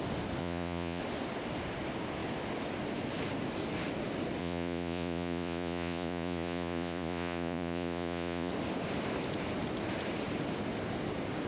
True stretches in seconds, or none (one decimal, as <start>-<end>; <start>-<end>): 0.0-0.4; 1.0-4.4; 8.5-11.5

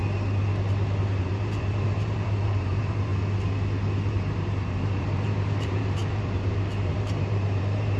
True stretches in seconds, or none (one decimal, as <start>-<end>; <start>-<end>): 0.0-1.2; 3.1-4.1

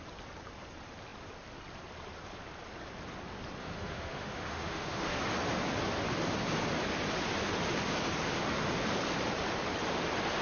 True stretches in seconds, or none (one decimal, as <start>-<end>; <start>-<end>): 0.0-3.6; 5.2-10.4